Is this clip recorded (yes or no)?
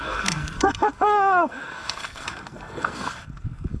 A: no